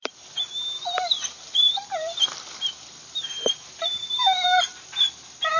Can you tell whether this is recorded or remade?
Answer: remade